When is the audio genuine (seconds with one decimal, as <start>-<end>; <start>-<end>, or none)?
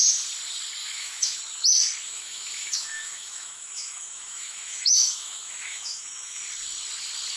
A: 0.0-0.8; 1.4-2.0; 6.4-7.4